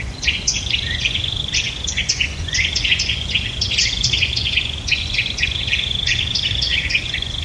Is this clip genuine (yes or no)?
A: no